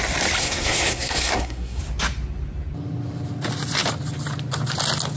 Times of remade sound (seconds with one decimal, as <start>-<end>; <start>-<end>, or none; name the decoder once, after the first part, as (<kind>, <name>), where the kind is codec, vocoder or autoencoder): 0.4-1.8 (codec, SNAC)